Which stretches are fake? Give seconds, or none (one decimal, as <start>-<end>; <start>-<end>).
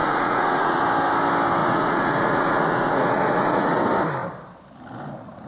0.0-0.8; 1.6-3.8